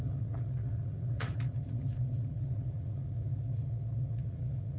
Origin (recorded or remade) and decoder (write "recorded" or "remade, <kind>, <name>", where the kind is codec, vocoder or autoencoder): remade, vocoder, Vocos